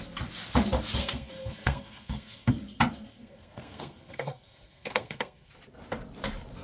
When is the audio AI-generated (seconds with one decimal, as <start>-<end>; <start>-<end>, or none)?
1.0-2.5; 3.1-5.5